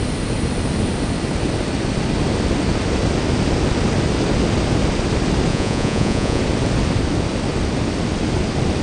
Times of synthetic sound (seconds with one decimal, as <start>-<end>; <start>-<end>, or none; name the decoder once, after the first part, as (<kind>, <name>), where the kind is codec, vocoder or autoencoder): 5.5-6.4 (vocoder, Vocos)